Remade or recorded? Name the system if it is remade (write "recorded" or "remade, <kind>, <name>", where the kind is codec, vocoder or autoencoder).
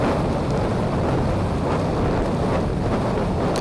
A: recorded